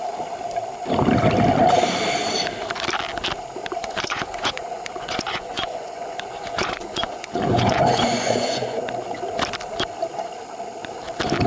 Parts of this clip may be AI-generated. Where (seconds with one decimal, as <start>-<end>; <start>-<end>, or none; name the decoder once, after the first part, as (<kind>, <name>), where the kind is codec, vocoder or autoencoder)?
3.6-8.8 (vocoder, Vocos)